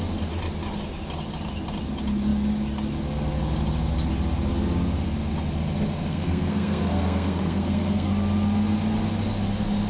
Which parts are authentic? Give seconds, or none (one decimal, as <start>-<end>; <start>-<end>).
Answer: 0.0-6.1; 8.1-9.9

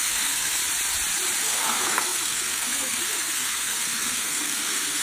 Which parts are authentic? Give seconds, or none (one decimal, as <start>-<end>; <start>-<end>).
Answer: 0.6-1.4

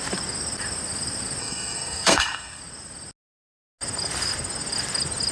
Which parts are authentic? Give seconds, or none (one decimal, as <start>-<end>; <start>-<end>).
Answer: 0.0-1.4; 2.6-5.3

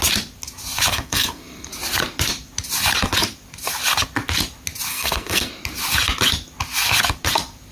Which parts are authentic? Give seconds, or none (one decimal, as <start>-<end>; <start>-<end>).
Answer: 0.0-0.9; 1.7-4.9; 5.5-7.7

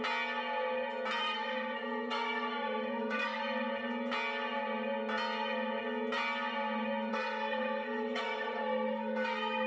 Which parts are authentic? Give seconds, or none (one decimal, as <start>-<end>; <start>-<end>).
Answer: 0.0-1.2; 3.4-7.1

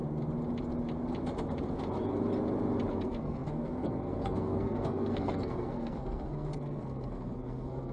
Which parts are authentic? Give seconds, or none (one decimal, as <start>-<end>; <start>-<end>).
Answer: 0.0-2.9